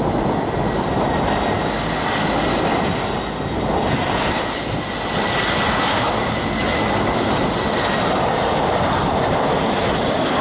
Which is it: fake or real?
real